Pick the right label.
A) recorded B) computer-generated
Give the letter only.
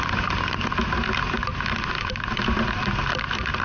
A